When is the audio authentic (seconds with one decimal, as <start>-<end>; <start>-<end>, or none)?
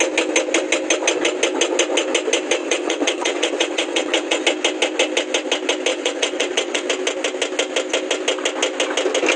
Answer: 0.0-2.6; 4.4-5.9; 6.9-9.4